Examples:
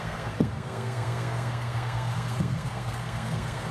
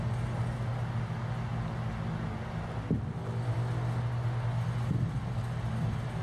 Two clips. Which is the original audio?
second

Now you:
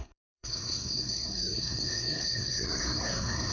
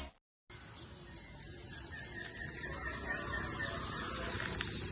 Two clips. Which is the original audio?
second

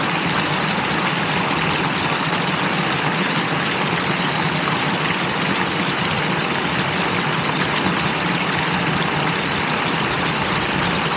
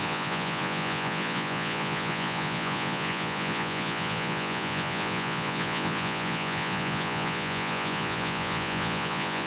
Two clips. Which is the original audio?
first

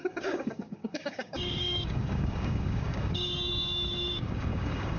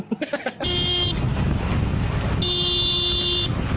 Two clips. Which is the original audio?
second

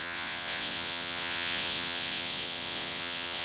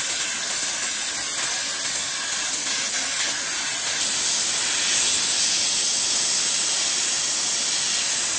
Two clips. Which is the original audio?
second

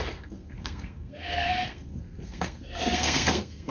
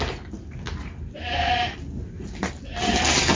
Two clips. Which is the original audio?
second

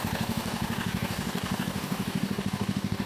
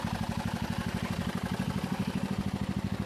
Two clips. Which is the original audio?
second